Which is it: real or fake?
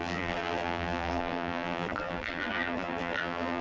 fake